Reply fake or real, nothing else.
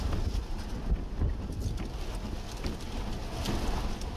real